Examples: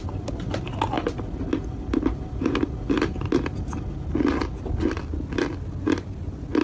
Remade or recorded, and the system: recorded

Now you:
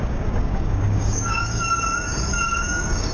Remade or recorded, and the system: remade, codec, DAC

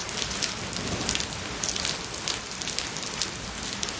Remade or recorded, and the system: recorded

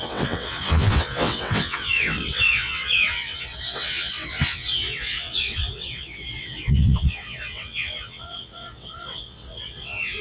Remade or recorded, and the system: remade, vocoder, WaveNeXt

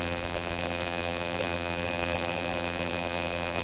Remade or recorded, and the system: remade, vocoder, BigVGAN v2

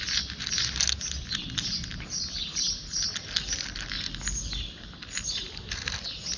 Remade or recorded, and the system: recorded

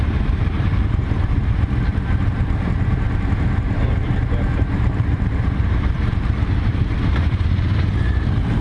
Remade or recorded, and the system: remade, vocoder, BigVGAN v2